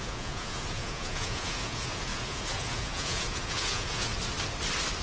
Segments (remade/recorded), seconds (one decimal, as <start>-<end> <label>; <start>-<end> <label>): 0.0-4.1 remade; 4.1-5.0 recorded